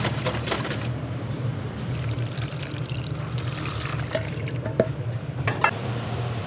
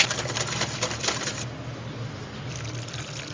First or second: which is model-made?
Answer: first